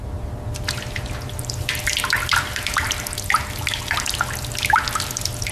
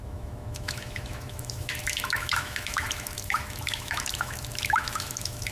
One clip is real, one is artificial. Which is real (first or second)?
first